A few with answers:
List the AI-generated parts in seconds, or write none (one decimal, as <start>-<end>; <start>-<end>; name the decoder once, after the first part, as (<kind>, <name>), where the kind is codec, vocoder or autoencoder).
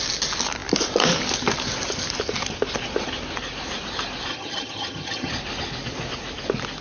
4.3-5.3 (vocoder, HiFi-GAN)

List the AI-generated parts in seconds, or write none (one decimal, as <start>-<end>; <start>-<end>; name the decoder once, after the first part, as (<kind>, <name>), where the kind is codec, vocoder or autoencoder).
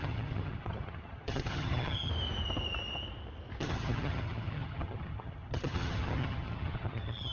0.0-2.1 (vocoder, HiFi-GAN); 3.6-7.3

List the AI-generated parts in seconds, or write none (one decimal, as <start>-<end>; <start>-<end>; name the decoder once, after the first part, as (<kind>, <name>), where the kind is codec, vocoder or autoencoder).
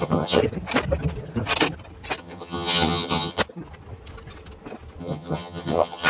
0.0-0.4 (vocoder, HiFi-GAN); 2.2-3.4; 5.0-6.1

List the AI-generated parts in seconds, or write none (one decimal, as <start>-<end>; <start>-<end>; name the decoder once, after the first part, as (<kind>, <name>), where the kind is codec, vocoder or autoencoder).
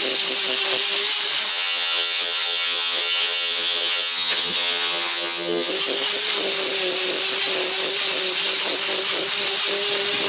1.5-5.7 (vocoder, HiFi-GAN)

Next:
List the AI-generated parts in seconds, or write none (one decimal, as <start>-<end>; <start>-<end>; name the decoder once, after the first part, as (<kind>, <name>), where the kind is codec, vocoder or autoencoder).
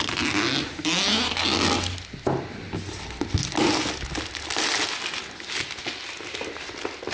none